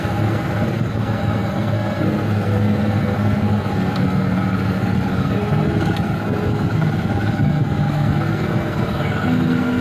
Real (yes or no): no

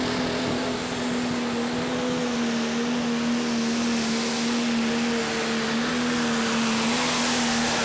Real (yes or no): yes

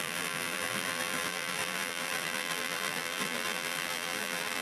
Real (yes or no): no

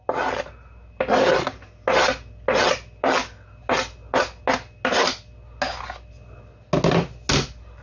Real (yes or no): yes